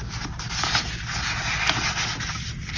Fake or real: real